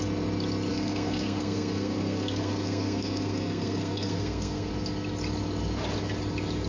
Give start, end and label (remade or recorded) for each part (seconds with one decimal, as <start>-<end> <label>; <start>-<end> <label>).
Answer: 0.0-0.7 recorded; 0.7-4.7 remade; 4.7-6.7 recorded